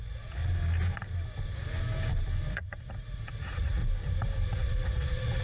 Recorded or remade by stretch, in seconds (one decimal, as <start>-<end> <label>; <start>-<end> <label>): 0.0-0.4 remade; 0.4-2.5 recorded; 2.5-3.8 remade; 3.8-4.5 recorded; 4.5-5.4 remade